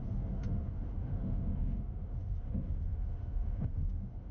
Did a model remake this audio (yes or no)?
yes